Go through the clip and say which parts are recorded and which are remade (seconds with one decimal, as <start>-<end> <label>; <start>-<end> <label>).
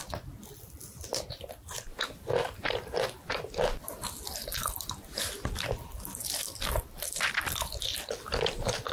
0.0-8.9 recorded